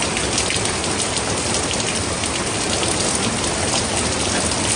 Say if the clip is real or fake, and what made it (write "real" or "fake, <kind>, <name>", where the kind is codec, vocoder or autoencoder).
real